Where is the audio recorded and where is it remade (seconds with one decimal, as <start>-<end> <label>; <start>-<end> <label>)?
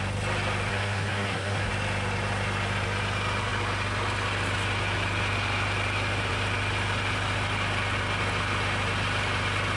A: 0.0-0.7 recorded; 0.7-1.7 remade; 1.7-9.8 recorded